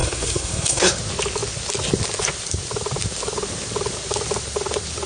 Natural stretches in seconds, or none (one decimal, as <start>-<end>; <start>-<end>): 0.9-5.1